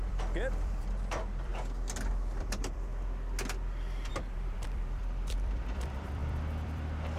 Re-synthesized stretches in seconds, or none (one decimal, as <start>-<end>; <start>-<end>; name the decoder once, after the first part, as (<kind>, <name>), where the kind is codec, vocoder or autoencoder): 0.0-1.5 (vocoder, BigVGAN v2); 2.4-2.9; 4.1-7.2